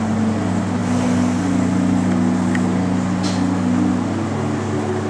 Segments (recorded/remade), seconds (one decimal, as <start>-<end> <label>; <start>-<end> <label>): 0.0-5.1 recorded